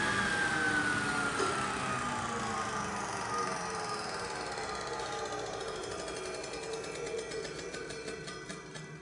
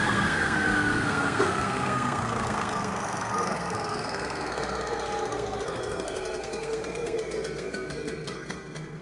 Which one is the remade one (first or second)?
second